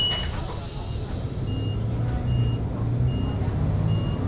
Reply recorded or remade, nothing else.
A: recorded